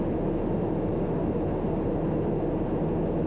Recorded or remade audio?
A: recorded